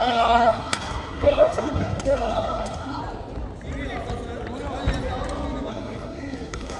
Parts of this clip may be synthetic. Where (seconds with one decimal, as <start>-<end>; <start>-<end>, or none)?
0.0-3.0; 5.7-6.8